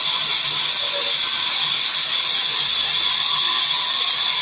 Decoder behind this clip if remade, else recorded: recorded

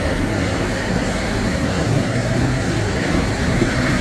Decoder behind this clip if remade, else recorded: remade, codec, SNAC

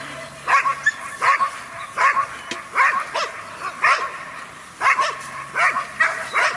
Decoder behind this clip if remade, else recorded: recorded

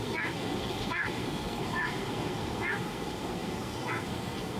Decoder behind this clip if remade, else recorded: remade, codec, SNAC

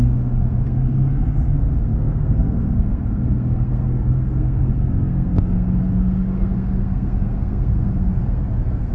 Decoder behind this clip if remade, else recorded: remade, codec, SNAC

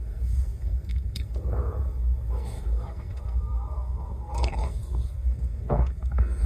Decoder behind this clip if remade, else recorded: remade, codec, SNAC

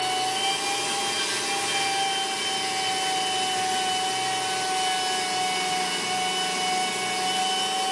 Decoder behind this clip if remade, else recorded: recorded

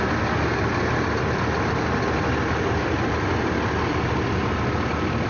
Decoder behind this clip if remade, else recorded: recorded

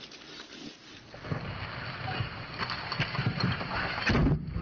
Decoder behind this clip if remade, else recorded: recorded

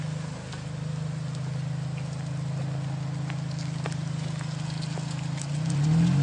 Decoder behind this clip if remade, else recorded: recorded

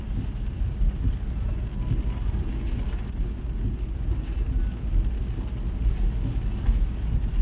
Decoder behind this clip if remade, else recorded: recorded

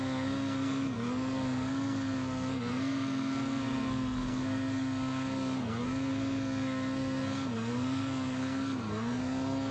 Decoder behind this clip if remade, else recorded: remade, codec, SNAC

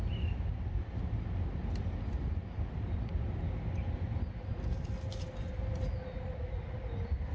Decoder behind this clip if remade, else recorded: recorded